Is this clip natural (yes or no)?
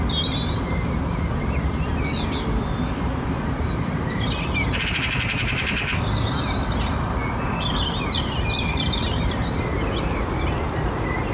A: no